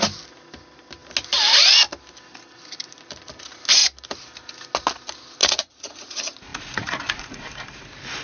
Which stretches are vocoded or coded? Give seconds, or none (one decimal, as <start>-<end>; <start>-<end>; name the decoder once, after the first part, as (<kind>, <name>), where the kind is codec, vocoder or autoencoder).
5.4-6.1 (vocoder, Vocos); 6.5-7.4

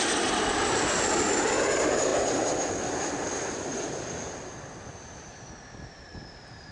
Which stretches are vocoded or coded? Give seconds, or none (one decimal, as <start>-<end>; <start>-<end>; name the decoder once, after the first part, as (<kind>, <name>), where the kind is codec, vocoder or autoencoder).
none

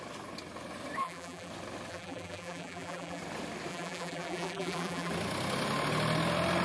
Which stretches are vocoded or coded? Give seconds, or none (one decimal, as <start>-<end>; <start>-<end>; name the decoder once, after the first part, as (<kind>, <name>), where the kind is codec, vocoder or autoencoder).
1.0-1.5 (vocoder, BigVGAN v2); 1.9-3.2; 3.7-5.1